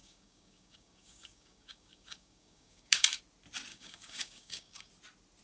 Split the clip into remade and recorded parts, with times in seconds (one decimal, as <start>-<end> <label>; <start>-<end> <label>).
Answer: 0.0-3.2 remade; 3.2-3.7 recorded; 3.7-4.9 remade; 4.9-5.4 recorded